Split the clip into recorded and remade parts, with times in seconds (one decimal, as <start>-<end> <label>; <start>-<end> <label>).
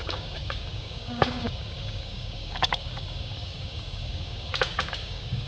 0.0-5.5 remade